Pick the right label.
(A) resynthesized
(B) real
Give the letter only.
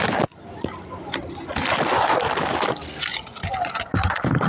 B